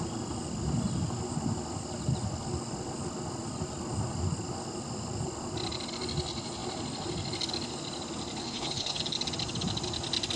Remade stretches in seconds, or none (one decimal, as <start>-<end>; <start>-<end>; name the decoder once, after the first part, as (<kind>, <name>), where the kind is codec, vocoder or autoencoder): 8.4-9.0 (codec, HILCodec)